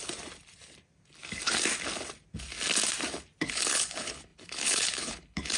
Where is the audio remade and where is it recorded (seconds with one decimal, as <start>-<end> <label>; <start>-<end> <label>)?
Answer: 0.0-3.4 recorded; 3.4-5.6 remade